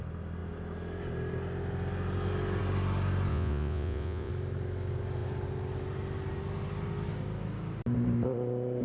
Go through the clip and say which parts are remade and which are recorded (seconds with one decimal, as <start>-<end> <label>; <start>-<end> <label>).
0.0-3.3 recorded; 3.3-4.3 remade; 4.3-8.8 recorded